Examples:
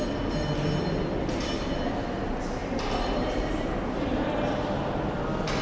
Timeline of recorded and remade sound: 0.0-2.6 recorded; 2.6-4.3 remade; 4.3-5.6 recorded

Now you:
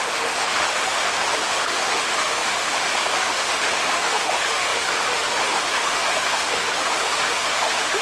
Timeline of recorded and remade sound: 0.0-8.0 remade

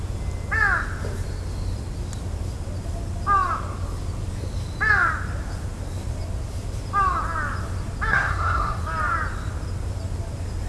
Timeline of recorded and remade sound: 0.0-8.1 recorded; 8.1-8.8 remade; 8.8-10.7 recorded

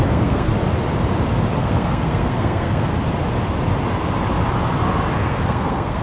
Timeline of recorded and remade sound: 0.0-0.5 remade; 0.5-1.5 recorded; 1.5-2.9 remade; 2.9-5.2 recorded; 5.2-6.0 remade

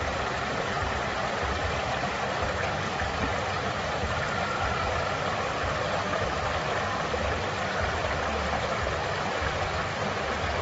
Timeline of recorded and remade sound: 0.0-1.1 recorded; 1.1-2.1 remade; 2.1-3.3 recorded; 3.3-7.1 remade; 7.1-10.6 recorded

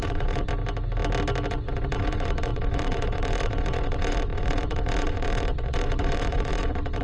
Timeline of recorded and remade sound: 0.0-0.5 remade; 0.5-1.5 recorded; 1.5-7.0 remade

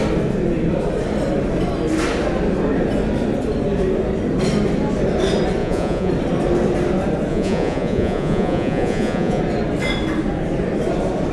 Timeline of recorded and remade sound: 0.0-5.6 recorded; 5.6-6.1 remade; 6.1-7.3 recorded; 7.3-9.4 remade; 9.4-11.3 recorded

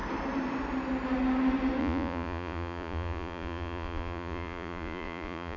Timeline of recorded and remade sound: 0.0-1.8 recorded; 1.8-5.6 remade